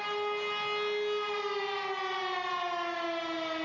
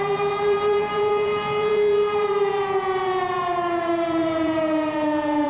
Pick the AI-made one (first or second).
second